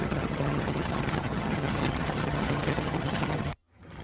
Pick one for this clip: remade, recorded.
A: remade